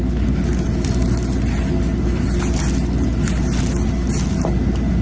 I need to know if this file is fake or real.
real